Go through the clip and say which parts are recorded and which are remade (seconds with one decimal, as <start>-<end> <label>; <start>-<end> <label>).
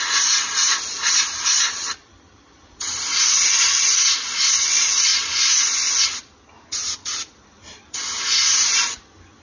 0.0-0.6 recorded; 0.6-3.2 remade; 3.2-6.8 recorded; 6.8-8.0 remade; 8.0-9.4 recorded